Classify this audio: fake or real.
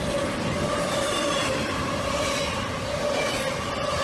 real